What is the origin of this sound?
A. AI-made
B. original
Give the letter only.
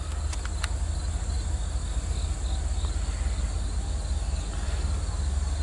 B